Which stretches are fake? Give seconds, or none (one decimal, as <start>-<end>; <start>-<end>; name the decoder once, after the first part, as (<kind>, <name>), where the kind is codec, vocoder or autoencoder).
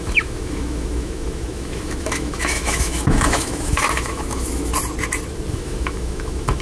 0.0-4.7 (autoencoder, DAC-VAE); 5.5-6.6